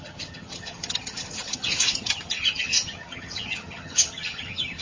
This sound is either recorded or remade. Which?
remade